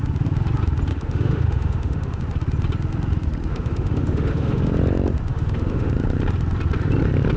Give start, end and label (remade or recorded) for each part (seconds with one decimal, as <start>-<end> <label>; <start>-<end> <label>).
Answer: 0.0-0.9 recorded; 0.9-2.2 remade; 2.2-3.5 recorded; 3.5-4.6 remade; 4.6-5.3 recorded; 5.3-5.9 remade; 5.9-7.4 recorded